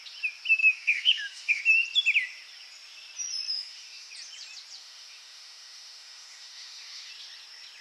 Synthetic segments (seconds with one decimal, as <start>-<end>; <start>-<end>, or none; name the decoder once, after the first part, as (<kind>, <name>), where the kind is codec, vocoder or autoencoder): 0.6-1.6 (autoencoder, DAC-VAE); 3.5-4.1; 4.8-7.1